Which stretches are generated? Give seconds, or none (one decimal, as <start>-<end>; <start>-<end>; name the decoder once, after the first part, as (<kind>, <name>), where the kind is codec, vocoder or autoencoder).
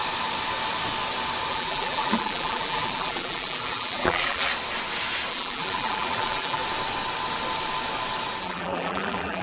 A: 1.5-4.5 (vocoder, BigVGAN v2); 5.3-6.6; 8.4-9.4